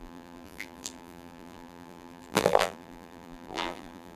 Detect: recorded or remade remade